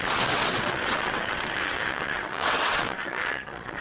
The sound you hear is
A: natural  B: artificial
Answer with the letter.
B